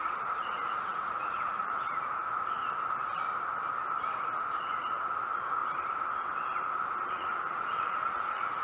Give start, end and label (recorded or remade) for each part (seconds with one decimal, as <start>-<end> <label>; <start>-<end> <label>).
0.0-2.6 remade; 2.6-4.7 recorded; 4.7-5.6 remade; 5.6-7.1 recorded; 7.1-8.6 remade

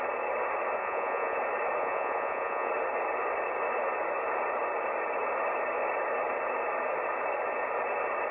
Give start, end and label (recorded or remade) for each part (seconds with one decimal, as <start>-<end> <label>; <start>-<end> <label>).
0.0-0.8 recorded; 0.8-1.4 remade; 1.4-1.8 recorded; 1.8-2.7 remade; 2.7-8.3 recorded